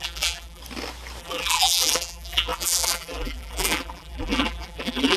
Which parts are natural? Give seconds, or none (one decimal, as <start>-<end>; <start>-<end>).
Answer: 0.6-1.2